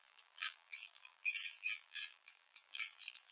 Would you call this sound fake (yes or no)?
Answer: yes